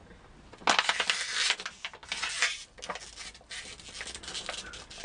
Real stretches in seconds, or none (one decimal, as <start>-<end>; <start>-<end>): 0.0-5.0